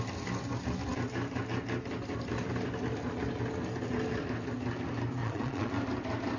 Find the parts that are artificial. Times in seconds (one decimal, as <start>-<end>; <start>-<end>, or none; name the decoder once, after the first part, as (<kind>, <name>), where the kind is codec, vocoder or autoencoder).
5.2-5.7 (vocoder, Vocos)